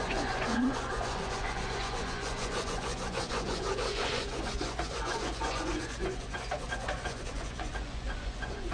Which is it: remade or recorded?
remade